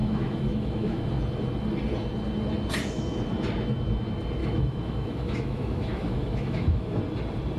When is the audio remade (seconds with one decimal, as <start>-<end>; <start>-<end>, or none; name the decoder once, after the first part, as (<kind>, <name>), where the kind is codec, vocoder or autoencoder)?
0.0-1.1 (autoencoder, DAC-VAE); 4.4-7.0